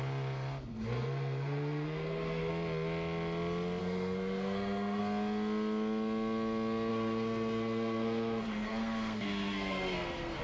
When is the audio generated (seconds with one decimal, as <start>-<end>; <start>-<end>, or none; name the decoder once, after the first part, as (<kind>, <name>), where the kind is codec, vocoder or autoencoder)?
0.7-2.5 (codec, SNAC); 3.8-5.0; 6.9-10.4